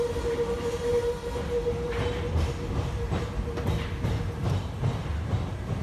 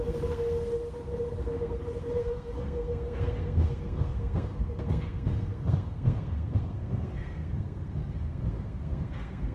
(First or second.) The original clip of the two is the first